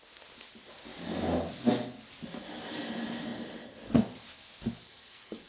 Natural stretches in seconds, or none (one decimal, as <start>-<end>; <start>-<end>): 0.0-4.8